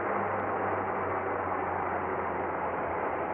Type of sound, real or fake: real